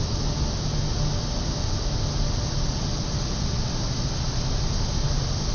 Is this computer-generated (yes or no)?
no